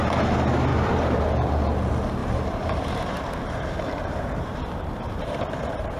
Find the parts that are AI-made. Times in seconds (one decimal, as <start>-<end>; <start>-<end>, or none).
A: 0.7-1.3; 2.2-6.0